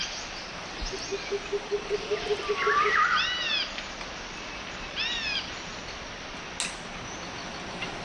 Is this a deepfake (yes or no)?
no